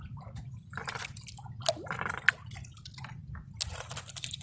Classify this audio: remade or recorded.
recorded